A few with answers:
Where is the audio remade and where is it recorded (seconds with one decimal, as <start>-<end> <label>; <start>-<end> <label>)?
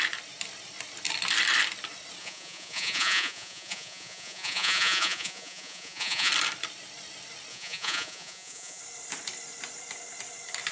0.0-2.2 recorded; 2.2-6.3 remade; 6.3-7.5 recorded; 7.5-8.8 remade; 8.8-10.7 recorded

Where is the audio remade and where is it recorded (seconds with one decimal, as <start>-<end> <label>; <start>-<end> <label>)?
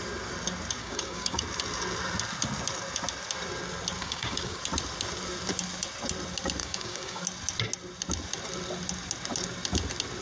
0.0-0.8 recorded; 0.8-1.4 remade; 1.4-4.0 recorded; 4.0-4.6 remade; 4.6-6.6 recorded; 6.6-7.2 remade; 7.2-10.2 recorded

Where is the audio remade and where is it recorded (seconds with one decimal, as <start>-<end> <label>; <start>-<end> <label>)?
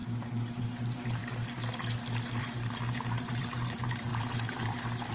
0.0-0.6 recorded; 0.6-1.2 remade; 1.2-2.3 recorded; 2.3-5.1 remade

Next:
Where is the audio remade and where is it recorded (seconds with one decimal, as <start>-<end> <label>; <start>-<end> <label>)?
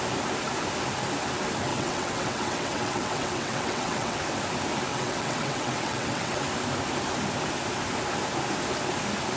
0.0-1.7 recorded; 1.7-4.2 remade; 4.2-4.9 recorded; 4.9-6.4 remade; 6.4-9.4 recorded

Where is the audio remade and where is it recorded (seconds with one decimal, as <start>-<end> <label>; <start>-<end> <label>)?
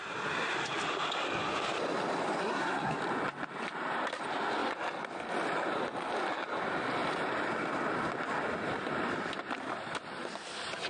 0.0-2.4 recorded; 2.4-3.0 remade; 3.0-10.9 recorded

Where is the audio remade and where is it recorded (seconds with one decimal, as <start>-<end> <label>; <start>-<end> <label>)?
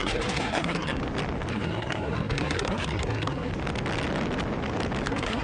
0.0-1.0 remade; 1.0-1.5 recorded; 1.5-3.5 remade; 3.5-5.0 recorded; 5.0-5.4 remade